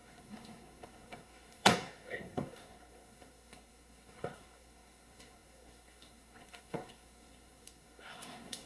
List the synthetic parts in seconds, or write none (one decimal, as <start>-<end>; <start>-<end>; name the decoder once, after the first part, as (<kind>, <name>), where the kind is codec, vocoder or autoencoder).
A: 0.0-8.7 (codec, SNAC)